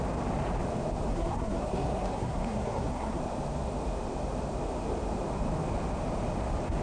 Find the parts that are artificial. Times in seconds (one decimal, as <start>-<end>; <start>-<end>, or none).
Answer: 1.1-3.2

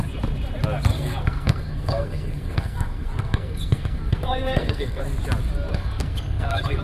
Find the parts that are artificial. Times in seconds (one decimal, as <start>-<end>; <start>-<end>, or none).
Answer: 0.9-5.0; 5.7-6.8